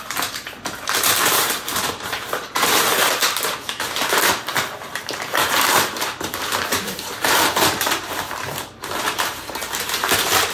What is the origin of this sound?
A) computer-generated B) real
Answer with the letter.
A